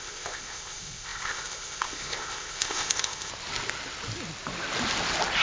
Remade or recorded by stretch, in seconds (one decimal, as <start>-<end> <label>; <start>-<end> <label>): 0.0-3.3 remade; 3.3-5.4 recorded